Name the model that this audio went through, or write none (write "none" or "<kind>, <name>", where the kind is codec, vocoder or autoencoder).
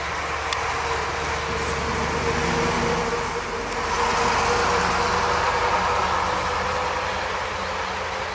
none